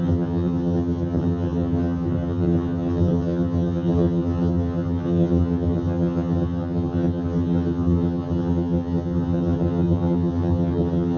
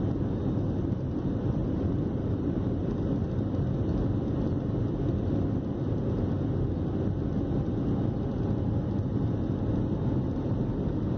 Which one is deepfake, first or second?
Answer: first